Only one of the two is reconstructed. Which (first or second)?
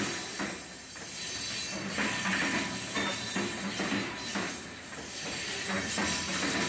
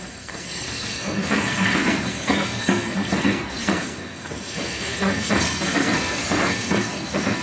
second